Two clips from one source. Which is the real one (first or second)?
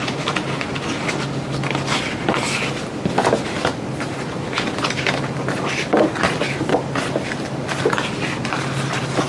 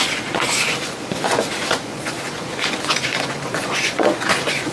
first